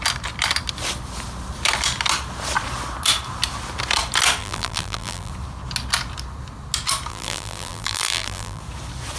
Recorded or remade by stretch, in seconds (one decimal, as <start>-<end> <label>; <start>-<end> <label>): 0.0-4.4 recorded; 4.4-5.3 remade; 5.3-7.1 recorded; 7.1-8.6 remade; 8.6-9.2 recorded